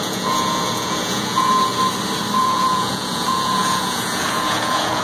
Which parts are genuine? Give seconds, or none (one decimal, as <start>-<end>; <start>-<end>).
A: 1.7-2.4